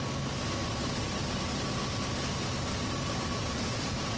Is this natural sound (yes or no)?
yes